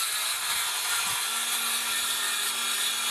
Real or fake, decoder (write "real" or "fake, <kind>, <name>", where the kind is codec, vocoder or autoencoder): real